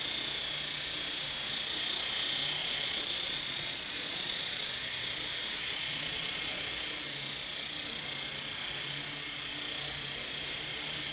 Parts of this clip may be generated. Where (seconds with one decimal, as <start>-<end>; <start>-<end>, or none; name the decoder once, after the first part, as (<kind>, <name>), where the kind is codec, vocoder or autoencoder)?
2.6-4.7 (vocoder, Vocos); 5.5-6.6